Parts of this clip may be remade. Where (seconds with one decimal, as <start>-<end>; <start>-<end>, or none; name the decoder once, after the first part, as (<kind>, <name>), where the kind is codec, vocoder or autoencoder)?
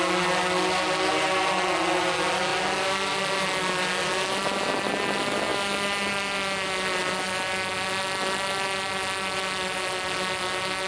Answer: none